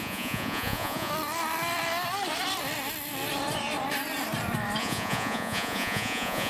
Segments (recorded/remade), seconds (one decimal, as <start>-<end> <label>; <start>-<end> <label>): 0.0-1.1 remade; 1.1-4.8 recorded; 4.8-6.5 remade